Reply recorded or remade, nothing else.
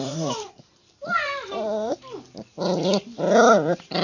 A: remade